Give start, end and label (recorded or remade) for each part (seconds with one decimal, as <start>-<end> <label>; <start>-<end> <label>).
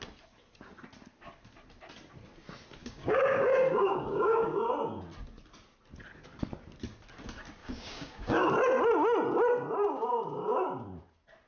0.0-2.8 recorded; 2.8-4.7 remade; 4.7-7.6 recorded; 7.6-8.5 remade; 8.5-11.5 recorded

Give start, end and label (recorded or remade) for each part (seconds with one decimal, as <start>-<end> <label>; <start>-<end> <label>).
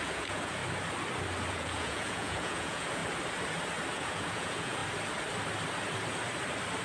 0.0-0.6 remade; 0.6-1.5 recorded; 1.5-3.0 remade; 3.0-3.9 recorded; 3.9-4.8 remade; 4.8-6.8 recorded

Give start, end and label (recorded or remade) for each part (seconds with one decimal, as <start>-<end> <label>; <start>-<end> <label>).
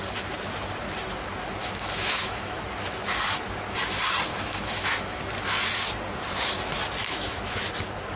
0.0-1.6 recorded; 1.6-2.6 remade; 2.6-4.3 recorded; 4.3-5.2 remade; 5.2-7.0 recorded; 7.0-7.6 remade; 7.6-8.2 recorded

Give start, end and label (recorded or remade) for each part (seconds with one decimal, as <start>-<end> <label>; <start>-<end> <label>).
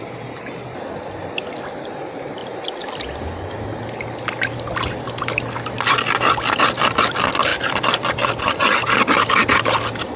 0.0-10.2 recorded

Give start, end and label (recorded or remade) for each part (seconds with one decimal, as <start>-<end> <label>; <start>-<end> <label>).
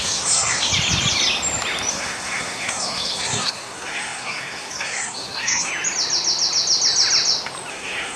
0.0-0.7 remade; 0.7-1.9 recorded; 1.9-5.7 remade; 5.7-7.7 recorded; 7.7-8.2 remade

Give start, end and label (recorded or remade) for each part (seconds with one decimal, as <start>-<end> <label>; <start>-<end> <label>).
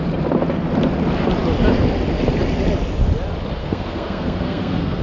0.0-3.6 recorded; 3.6-5.0 remade